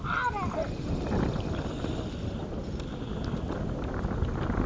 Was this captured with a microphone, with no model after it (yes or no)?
yes